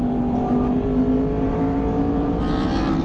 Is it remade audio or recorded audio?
recorded